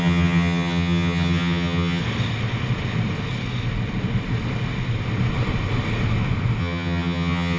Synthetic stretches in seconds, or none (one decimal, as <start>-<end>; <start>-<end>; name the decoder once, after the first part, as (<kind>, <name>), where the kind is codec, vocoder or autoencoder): 0.0-2.0 (vocoder, HiFi-GAN); 6.6-7.6